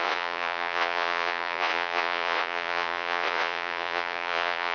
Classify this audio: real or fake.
fake